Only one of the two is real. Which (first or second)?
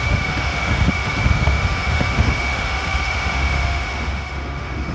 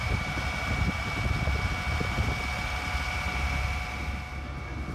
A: second